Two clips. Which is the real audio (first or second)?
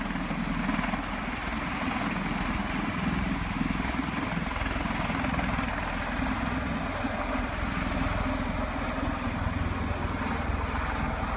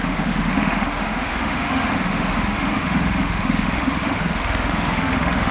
first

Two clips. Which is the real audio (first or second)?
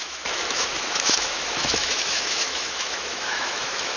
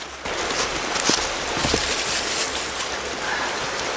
second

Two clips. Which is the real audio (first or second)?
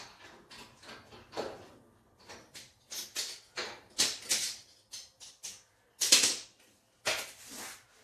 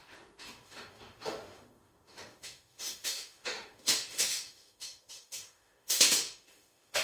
first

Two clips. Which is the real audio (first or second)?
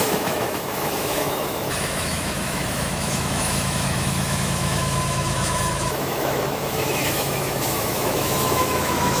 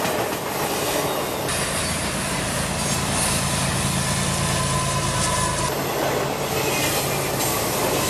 second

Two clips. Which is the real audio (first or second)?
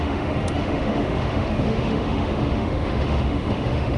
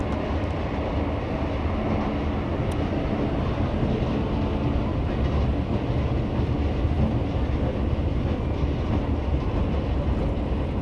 second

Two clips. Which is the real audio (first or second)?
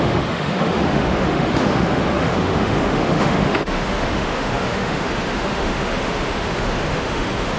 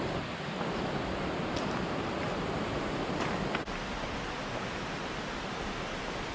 second